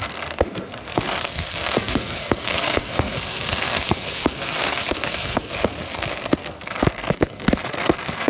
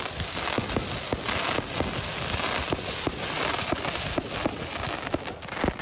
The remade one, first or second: first